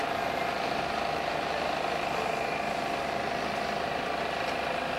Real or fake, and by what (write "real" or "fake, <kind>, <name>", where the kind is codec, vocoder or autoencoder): real